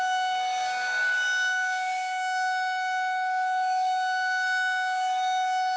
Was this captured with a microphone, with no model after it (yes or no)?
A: no